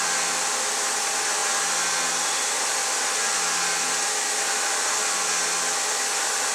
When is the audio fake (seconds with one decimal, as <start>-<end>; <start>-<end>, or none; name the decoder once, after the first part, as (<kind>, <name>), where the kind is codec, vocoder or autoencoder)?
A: none